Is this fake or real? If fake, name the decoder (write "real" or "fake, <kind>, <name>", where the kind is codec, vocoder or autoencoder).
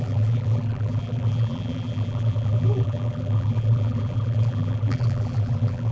fake, vocoder, BigVGAN v2